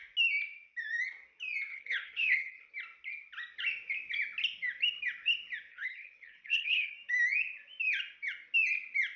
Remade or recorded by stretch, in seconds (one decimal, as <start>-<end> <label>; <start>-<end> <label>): 0.0-1.7 recorded; 1.7-2.7 remade; 2.7-5.7 recorded; 5.7-6.9 remade; 6.9-9.2 recorded